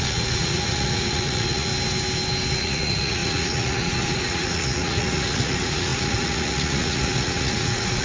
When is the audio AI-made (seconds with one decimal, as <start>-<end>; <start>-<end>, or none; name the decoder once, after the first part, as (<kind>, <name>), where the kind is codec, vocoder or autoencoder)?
0.0-1.7 (vocoder, Vocos); 2.5-8.0